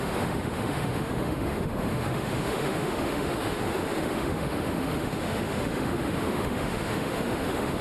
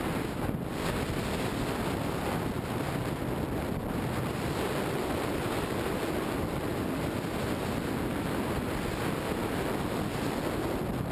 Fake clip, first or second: first